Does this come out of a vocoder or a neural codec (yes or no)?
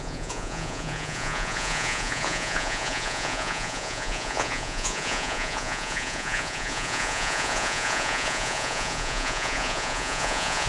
yes